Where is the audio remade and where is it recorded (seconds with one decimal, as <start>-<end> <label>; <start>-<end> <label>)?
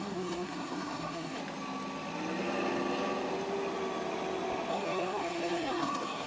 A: 0.0-1.4 remade; 1.4-4.7 recorded; 4.7-6.3 remade